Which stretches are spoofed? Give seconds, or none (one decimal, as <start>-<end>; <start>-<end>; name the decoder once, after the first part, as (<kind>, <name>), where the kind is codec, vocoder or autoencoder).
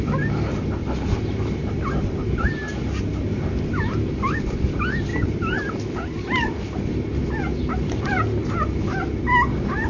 none